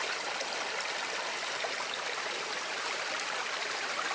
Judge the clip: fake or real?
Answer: real